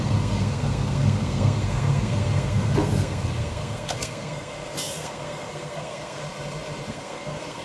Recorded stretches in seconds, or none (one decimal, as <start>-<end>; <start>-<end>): 6.2-6.9